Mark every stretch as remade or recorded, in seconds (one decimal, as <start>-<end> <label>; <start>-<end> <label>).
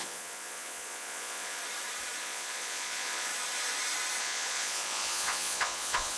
0.0-1.6 remade; 1.6-2.2 recorded; 2.2-3.3 remade; 3.3-4.2 recorded; 4.2-6.2 remade